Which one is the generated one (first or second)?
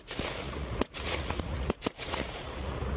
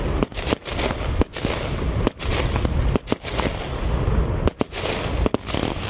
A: first